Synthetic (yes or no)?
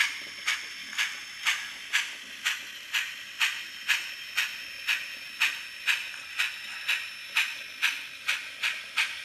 no